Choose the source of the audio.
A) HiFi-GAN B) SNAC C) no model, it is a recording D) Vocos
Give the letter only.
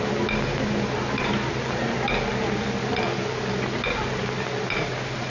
C